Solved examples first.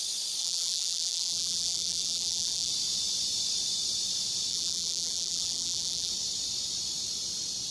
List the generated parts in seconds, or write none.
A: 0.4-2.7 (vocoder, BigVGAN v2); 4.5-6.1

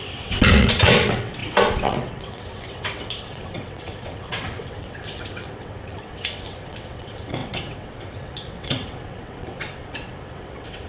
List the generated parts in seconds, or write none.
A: 0.0-10.9 (vocoder, WaveNeXt)

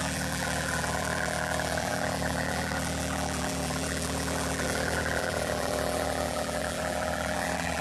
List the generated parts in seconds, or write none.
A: 0.0-7.8 (vocoder, BigVGAN v2)